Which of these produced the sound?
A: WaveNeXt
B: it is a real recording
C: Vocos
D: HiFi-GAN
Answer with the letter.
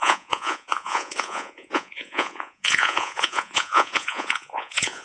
C